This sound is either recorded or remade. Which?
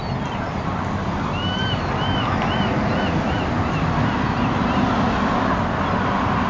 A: recorded